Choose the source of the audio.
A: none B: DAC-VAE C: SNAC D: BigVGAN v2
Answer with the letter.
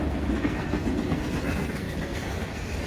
C